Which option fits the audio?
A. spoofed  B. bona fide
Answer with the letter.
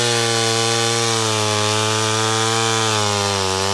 B